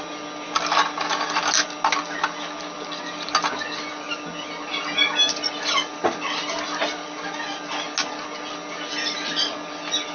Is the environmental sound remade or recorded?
recorded